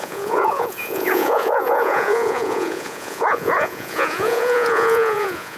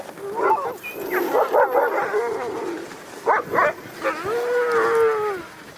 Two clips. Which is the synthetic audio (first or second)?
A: first